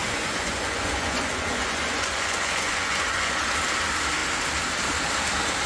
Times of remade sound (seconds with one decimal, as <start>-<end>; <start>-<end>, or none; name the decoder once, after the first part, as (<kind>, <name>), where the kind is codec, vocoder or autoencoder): 0.0-3.4 (vocoder, Vocos)